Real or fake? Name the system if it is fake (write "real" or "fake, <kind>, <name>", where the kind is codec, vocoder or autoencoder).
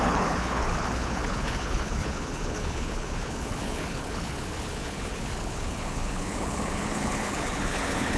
fake, codec, HILCodec